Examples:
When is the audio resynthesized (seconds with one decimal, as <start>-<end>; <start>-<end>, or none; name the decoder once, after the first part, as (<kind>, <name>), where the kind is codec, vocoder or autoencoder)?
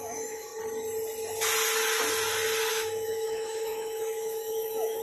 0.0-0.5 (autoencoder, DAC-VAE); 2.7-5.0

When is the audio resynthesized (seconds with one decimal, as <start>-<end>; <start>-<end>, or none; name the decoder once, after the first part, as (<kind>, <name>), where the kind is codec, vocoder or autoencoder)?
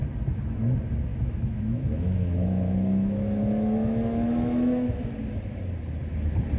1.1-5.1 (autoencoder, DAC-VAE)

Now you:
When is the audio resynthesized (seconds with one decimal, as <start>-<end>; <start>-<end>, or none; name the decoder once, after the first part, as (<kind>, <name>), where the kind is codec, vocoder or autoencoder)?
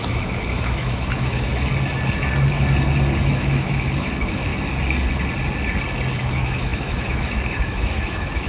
0.0-1.5 (autoencoder, DAC-VAE); 3.3-4.5; 6.2-8.5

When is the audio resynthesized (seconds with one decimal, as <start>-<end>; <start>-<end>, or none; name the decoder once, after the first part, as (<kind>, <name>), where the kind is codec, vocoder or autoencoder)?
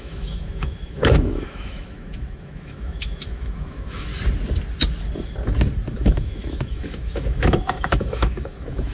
0.0-4.1 (autoencoder, DAC-VAE); 5.9-8.9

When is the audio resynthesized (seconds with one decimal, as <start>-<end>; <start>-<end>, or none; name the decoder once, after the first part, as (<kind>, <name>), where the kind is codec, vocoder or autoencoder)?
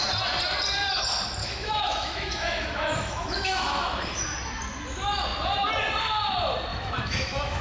1.4-4.2 (autoencoder, DAC-VAE); 6.7-7.6